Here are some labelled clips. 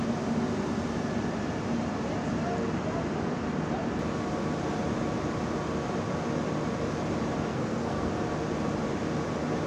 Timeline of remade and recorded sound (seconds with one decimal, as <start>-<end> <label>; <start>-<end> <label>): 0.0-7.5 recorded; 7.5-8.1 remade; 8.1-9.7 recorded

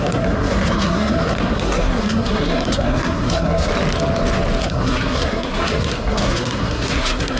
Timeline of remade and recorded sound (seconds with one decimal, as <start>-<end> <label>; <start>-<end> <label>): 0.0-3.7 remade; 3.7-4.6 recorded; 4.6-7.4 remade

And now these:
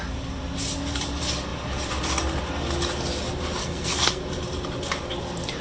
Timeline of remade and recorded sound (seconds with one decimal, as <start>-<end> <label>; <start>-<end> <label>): 0.0-3.6 recorded; 3.6-4.2 remade; 4.2-5.6 recorded

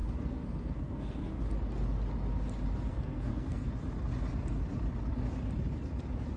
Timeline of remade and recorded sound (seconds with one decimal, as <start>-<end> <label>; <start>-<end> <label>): 0.0-1.4 remade; 1.4-2.9 recorded; 2.9-3.7 remade; 3.7-6.4 recorded

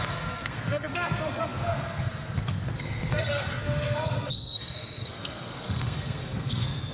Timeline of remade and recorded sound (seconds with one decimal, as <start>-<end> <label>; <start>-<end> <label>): 0.0-6.9 remade